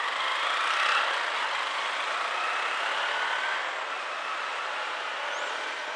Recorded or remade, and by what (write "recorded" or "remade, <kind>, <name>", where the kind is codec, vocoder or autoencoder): recorded